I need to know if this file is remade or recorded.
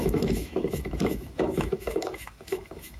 remade